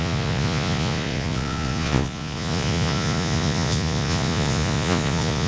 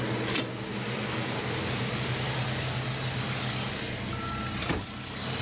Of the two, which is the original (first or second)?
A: second